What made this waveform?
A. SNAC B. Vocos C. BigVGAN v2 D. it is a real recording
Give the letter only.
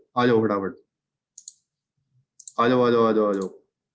D